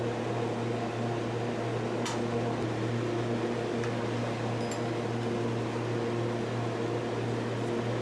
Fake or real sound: real